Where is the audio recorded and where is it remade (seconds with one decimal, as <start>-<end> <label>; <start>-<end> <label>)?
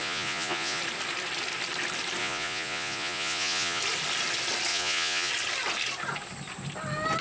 0.0-0.8 remade; 0.8-2.2 recorded; 2.2-3.8 remade; 3.8-4.7 recorded; 4.7-5.3 remade; 5.3-7.2 recorded